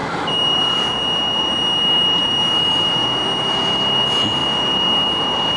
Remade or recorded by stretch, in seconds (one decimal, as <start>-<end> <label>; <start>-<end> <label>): 0.0-5.6 recorded